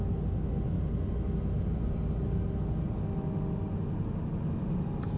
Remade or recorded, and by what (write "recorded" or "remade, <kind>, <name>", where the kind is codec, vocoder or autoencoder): recorded